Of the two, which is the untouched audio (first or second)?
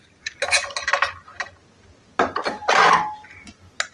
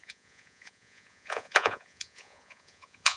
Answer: first